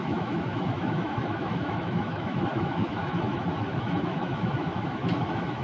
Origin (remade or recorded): remade